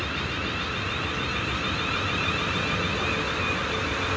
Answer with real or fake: real